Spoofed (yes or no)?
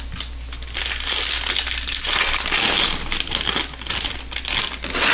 no